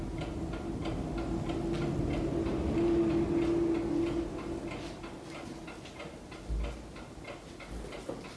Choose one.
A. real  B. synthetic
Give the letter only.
A